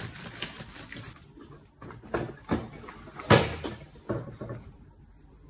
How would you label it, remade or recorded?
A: recorded